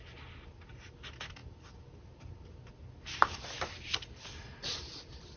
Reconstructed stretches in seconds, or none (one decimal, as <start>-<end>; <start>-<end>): none